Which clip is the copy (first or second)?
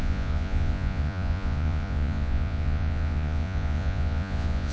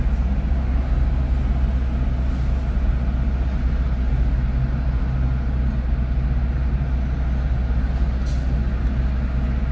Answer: first